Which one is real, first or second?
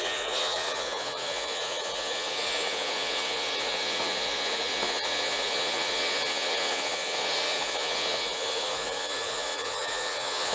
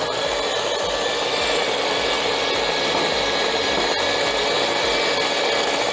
second